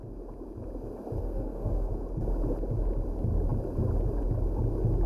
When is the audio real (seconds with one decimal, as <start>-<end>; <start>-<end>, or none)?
0.0-1.2; 1.9-5.1